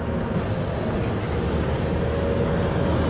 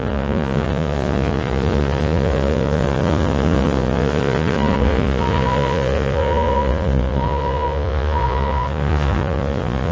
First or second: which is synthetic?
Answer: second